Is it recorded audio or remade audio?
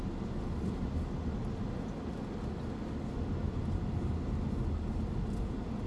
recorded